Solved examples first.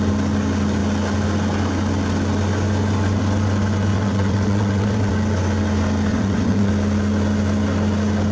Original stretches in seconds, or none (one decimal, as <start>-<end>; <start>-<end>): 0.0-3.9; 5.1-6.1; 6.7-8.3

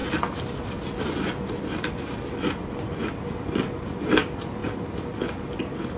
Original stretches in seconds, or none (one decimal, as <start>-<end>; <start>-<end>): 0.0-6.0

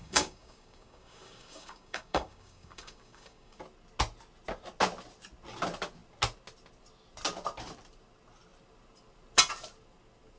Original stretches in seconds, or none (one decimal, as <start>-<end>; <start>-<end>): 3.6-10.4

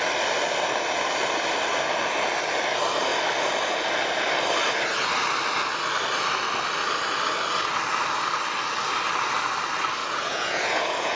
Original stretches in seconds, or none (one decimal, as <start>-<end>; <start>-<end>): 0.0-10.0

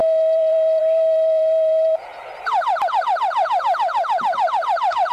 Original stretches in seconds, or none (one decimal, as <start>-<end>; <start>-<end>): 2.1-3.0

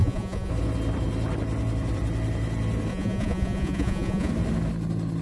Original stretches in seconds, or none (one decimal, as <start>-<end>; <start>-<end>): 0.5-2.9; 4.3-5.2

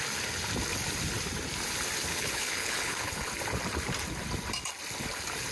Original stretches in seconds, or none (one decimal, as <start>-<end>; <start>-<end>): 0.0-2.1; 3.3-5.5